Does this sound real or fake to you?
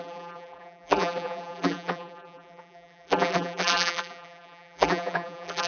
fake